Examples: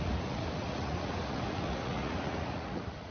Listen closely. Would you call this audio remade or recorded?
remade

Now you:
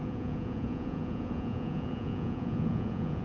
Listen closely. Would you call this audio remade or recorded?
remade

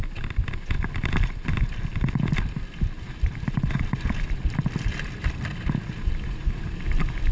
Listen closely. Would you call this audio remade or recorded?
recorded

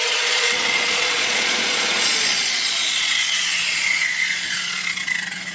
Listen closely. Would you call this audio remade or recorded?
remade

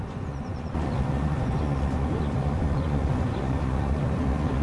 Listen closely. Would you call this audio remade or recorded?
remade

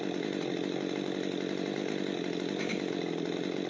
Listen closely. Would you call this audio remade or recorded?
recorded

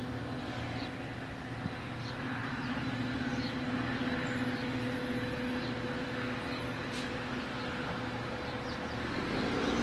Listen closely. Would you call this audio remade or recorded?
recorded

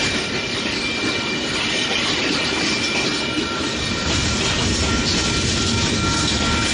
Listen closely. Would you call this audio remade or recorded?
recorded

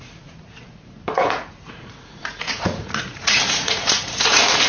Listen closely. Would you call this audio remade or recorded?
remade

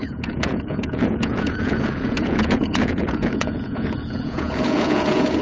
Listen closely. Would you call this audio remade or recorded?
remade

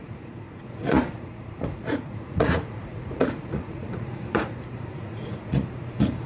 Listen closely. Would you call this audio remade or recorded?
remade